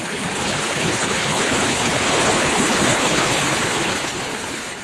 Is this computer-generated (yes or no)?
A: yes